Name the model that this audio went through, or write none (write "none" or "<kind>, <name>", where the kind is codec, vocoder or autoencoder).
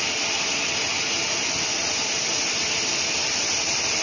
none